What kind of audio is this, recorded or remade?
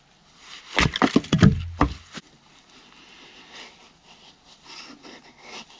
recorded